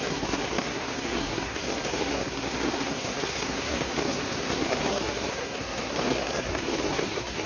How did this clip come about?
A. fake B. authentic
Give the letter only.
A